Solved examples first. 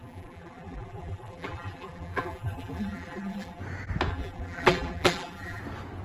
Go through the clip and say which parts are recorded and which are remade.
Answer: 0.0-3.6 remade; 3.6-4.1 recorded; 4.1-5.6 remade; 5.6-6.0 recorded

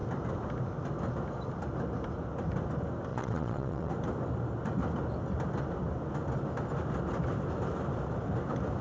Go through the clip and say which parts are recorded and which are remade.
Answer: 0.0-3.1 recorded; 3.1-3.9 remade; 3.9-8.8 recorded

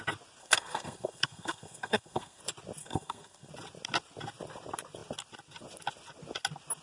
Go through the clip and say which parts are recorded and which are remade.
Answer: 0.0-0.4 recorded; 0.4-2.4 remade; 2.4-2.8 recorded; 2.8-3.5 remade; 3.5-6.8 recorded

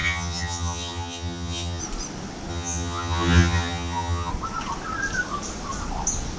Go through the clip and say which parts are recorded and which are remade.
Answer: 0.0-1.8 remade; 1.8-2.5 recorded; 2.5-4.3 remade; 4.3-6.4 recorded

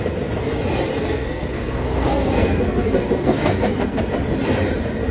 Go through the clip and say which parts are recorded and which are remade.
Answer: 0.0-0.9 recorded; 0.9-4.0 remade; 4.0-5.1 recorded

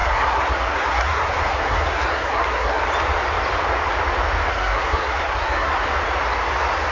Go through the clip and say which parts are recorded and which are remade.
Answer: 0.0-2.8 remade; 2.8-4.5 recorded; 4.5-5.8 remade; 5.8-6.9 recorded

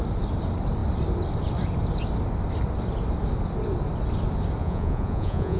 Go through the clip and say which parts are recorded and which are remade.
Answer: 0.0-4.6 recorded; 4.6-5.6 remade

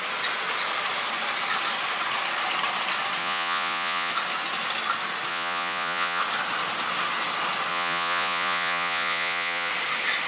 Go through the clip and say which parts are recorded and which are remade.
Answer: 0.0-3.2 recorded; 3.2-4.1 remade; 4.1-5.3 recorded; 5.3-6.2 remade; 6.2-7.7 recorded; 7.7-9.7 remade; 9.7-10.3 recorded